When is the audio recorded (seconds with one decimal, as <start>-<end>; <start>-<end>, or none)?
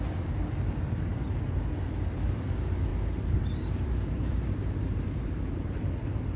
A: 0.0-2.9; 5.8-6.4